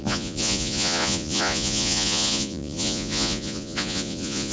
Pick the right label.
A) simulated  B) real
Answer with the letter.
A